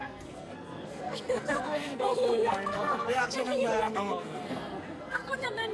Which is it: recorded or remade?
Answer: remade